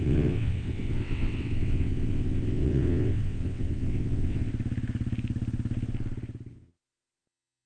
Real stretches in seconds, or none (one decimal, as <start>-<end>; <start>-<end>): 4.5-6.5